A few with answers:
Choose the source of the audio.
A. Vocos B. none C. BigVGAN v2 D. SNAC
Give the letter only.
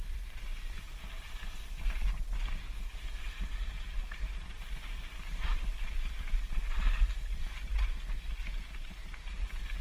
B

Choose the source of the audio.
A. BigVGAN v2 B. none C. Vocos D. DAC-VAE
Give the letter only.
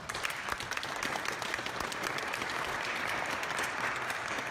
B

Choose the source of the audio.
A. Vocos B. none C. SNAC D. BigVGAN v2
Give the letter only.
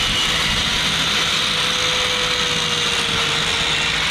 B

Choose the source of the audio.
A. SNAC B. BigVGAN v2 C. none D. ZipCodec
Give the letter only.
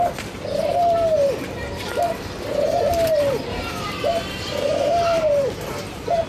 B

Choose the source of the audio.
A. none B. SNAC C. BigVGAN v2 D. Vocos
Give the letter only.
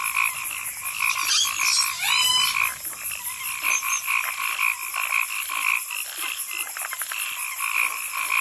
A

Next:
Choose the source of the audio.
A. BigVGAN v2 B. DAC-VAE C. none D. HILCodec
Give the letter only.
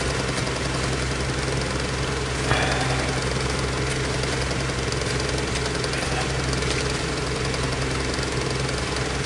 C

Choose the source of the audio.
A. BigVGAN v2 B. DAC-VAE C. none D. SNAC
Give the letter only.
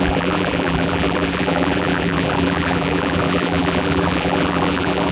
A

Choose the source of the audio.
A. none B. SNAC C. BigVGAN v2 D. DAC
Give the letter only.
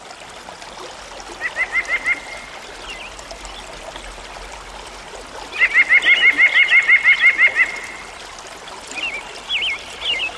A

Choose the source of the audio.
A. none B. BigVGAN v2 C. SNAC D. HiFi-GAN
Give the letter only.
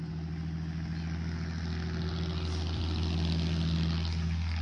A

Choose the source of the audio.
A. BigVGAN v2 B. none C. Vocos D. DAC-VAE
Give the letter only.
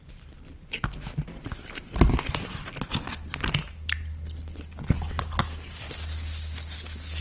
B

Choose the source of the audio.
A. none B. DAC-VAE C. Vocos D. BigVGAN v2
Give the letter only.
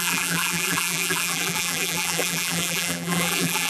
D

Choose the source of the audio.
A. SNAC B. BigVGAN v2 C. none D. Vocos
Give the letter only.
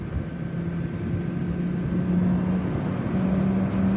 C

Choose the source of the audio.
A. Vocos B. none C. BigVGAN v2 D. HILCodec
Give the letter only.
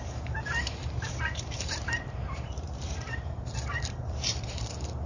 C